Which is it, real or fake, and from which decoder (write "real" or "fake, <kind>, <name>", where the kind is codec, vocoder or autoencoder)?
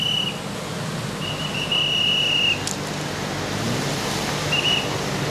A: real